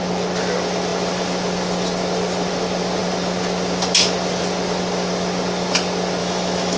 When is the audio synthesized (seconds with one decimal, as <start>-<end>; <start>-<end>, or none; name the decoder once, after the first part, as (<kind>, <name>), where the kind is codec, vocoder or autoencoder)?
6.2-6.8 (autoencoder, DAC-VAE)